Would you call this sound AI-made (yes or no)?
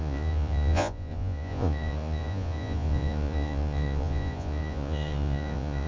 yes